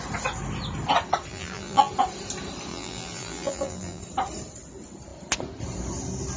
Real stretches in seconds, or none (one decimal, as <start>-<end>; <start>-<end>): 0.0-1.3; 1.9-2.7; 4.0-6.4